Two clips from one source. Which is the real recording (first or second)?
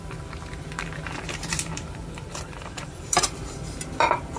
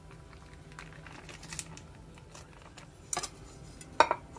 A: second